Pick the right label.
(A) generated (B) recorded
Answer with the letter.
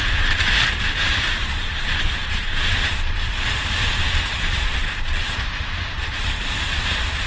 A